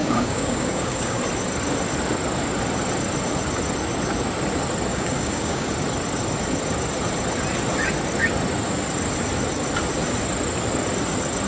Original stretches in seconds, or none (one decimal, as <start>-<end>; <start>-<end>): 1.2-4.9; 5.7-11.5